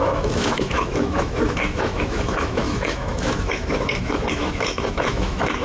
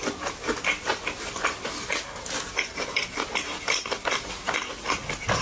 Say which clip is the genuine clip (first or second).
second